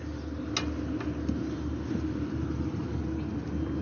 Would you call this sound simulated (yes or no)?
no